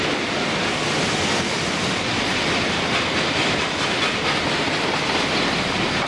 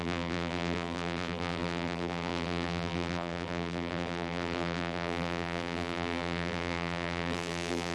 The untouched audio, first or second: first